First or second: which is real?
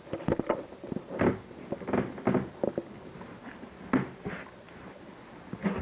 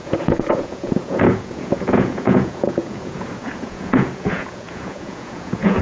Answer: first